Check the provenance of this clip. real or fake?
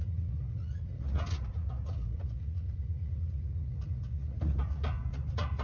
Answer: fake